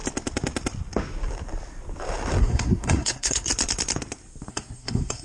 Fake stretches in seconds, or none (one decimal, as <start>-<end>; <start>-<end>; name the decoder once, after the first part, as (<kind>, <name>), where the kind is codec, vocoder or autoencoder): 2.4-3.5 (codec, SNAC); 4.5-5.2